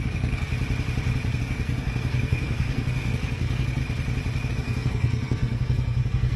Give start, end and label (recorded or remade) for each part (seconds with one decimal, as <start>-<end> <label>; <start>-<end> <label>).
0.0-0.5 remade; 0.5-1.4 recorded; 1.4-3.8 remade; 3.8-4.5 recorded; 4.5-6.4 remade